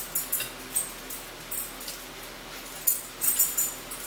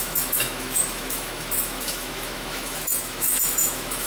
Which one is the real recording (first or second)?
first